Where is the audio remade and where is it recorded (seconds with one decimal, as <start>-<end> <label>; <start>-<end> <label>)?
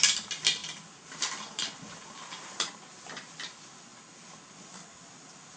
0.0-5.6 recorded